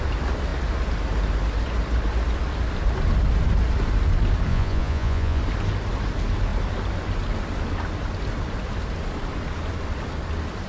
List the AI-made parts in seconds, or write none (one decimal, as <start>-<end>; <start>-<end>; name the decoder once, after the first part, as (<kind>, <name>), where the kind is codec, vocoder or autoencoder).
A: 4.5-5.4 (vocoder, Vocos)